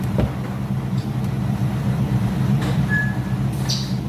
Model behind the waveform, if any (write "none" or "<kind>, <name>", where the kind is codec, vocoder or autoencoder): none